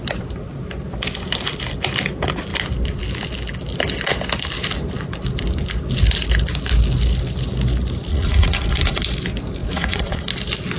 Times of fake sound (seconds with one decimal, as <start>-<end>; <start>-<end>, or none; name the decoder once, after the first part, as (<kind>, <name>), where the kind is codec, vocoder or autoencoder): 8.1-9.0 (vocoder, Vocos); 9.6-10.3